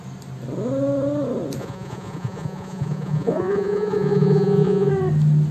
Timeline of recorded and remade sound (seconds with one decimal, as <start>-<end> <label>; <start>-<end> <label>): 0.0-1.6 recorded; 1.6-4.9 remade; 4.9-5.5 recorded